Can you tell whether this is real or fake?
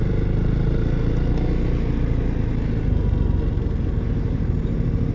real